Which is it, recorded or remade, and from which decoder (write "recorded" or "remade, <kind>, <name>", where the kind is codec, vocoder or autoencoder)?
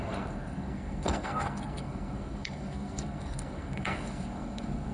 remade, codec, SNAC